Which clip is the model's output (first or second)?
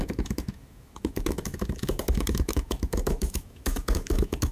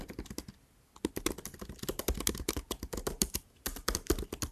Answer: first